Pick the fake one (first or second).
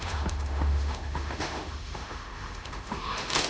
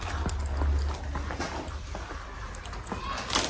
first